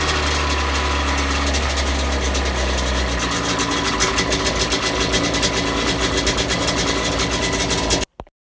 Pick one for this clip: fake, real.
real